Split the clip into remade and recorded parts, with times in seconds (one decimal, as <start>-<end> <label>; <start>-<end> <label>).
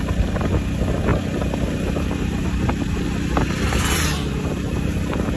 0.0-5.4 recorded